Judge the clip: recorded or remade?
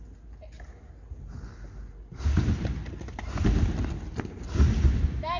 recorded